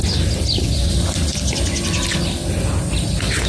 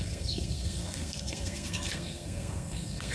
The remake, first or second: second